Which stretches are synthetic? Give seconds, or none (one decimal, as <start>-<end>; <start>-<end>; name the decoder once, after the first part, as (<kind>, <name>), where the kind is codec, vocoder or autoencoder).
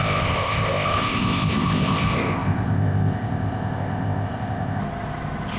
0.0-4.8 (codec, ZipCodec)